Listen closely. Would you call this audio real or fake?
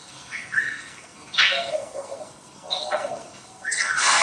fake